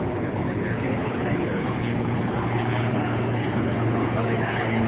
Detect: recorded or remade remade